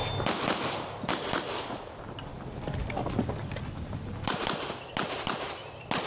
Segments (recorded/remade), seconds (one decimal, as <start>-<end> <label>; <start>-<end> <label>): 0.0-6.1 recorded